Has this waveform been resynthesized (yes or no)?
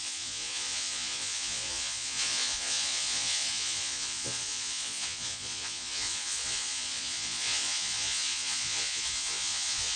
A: yes